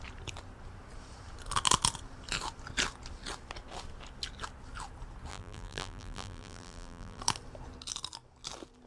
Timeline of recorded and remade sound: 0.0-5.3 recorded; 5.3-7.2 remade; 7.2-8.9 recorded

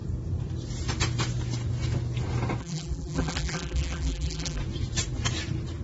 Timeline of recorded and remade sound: 0.0-2.6 recorded; 2.6-4.6 remade; 4.6-5.8 recorded